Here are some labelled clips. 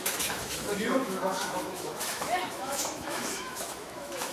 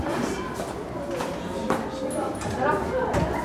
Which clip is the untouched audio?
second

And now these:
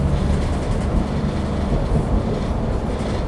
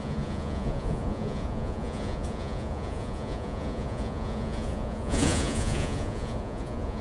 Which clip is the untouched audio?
first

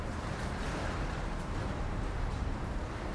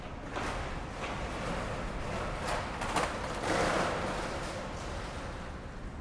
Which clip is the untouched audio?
second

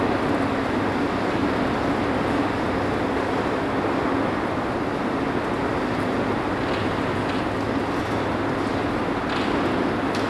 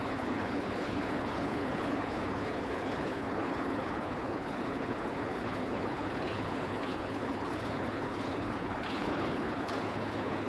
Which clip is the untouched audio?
first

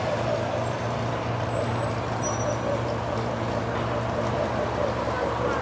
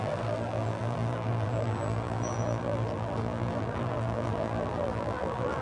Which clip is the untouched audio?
first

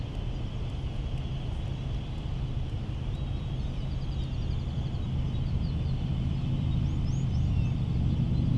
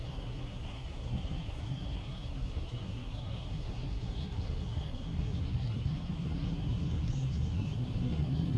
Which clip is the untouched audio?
first